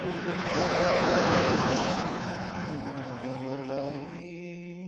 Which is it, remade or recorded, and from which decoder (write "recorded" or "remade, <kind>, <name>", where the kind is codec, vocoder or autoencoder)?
remade, codec, HILCodec